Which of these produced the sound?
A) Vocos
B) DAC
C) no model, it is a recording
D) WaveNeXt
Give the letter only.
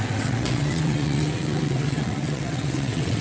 D